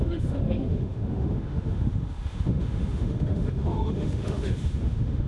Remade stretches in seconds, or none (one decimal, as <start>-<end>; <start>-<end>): 0.0-5.3